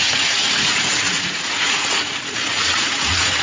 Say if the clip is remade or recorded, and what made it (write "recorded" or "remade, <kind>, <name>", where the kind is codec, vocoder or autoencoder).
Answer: remade, vocoder, Vocos